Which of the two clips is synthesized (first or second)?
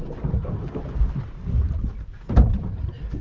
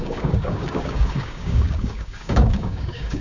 second